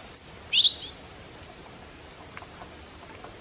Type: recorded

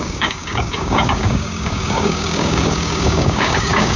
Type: remade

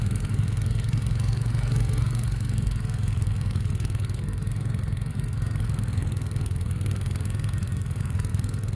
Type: remade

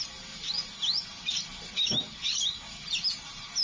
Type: recorded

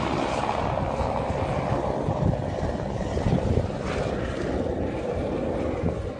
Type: recorded